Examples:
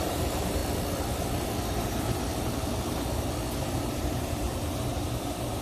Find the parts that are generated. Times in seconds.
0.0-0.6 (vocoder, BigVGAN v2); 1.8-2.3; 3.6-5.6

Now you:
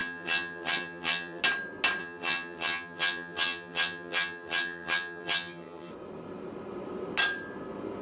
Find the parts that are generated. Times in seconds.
0.0-1.4 (vocoder, HiFi-GAN); 2.0-5.9

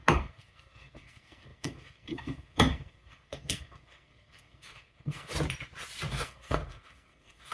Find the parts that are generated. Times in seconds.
0.0-5.3 (codec, SNAC); 6.1-7.5

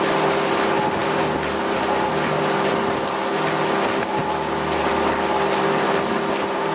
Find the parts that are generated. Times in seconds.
none

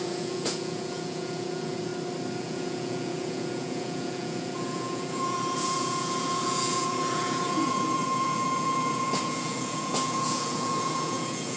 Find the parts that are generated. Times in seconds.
0.0-1.9 (vocoder, Vocos); 2.4-11.6

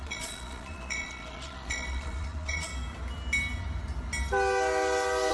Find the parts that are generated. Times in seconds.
0.0-2.7 (vocoder, Vocos)

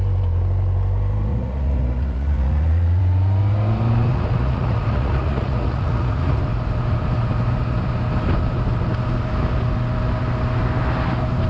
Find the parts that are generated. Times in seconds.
1.3-3.0 (vocoder, Vocos); 4.1-6.4